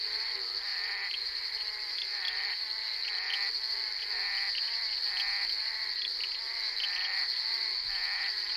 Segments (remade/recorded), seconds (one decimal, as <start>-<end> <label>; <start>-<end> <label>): 0.0-0.7 recorded; 0.7-2.5 remade; 2.5-8.6 recorded